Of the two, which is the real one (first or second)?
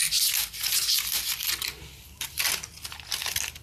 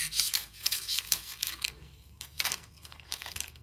first